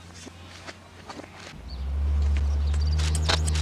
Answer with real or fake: real